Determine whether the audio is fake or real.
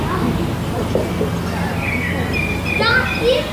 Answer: real